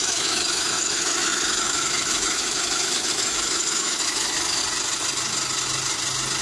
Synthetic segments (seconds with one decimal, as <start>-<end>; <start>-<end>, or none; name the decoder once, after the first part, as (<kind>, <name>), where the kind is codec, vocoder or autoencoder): 0.0-4.6 (autoencoder, DAC-VAE)